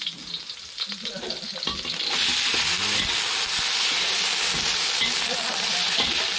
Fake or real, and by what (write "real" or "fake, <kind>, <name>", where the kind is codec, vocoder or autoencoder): real